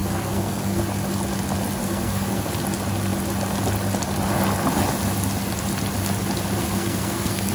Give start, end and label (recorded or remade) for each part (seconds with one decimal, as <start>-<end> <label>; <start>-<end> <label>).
0.0-0.8 remade; 0.8-1.8 recorded; 1.8-2.5 remade; 2.5-6.6 recorded; 6.6-7.5 remade